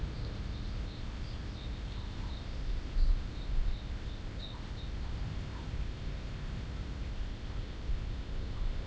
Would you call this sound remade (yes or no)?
yes